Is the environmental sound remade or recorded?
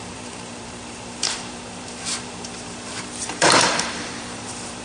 remade